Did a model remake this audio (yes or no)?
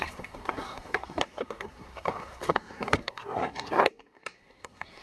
yes